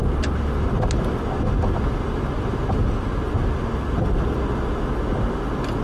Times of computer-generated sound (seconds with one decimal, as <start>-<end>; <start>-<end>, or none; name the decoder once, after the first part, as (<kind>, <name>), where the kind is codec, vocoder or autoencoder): none